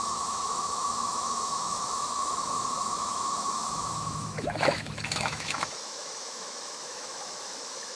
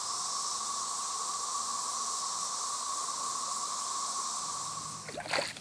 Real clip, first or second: second